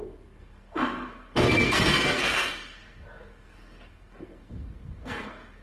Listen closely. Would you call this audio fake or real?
fake